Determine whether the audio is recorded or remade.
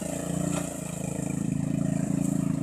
remade